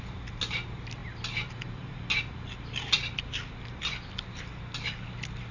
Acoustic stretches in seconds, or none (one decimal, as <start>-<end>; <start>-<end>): 0.0-5.5